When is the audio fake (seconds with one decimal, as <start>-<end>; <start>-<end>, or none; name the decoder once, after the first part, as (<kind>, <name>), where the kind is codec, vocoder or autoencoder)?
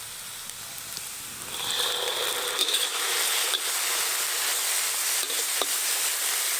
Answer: 2.6-3.1 (autoencoder, DAC-VAE)